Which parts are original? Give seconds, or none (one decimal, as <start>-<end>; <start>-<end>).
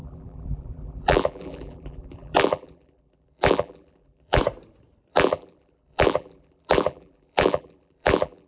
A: 4.4-5.1